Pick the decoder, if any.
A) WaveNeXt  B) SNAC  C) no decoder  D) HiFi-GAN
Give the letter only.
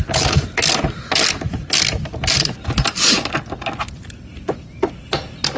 C